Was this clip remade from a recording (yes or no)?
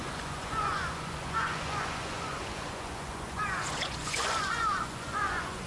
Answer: yes